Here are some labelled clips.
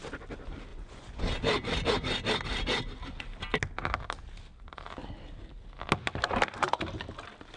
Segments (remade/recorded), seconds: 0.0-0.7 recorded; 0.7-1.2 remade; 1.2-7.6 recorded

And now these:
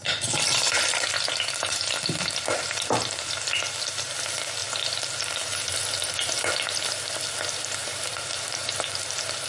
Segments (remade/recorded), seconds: 0.0-9.5 recorded

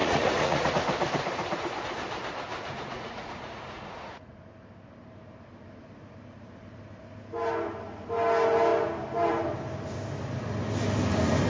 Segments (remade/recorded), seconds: 0.0-0.7 remade; 0.7-2.5 recorded; 2.5-4.4 remade; 4.4-11.5 recorded

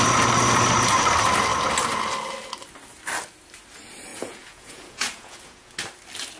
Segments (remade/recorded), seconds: 0.0-4.1 recorded; 4.1-5.7 remade; 5.7-6.4 recorded

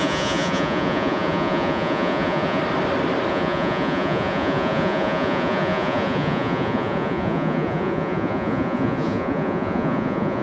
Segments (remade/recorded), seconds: 0.0-2.6 remade; 2.6-3.3 recorded; 3.3-10.4 remade

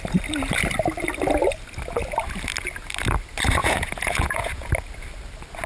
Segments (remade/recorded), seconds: 0.0-3.6 recorded; 3.6-4.7 remade; 4.7-5.7 recorded

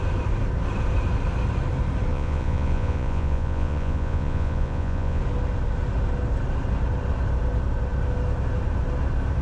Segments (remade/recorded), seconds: 0.0-2.1 recorded; 2.1-5.2 remade; 5.2-9.4 recorded

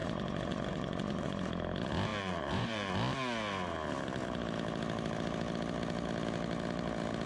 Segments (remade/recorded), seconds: 0.0-1.5 remade; 1.5-2.1 recorded; 2.1-2.9 remade; 2.9-7.3 recorded